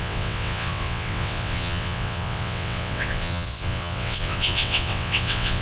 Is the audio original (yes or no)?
no